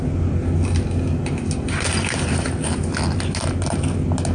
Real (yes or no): yes